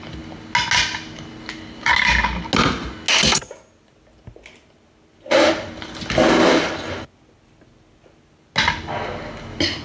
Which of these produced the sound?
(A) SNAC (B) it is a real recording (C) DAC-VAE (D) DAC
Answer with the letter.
B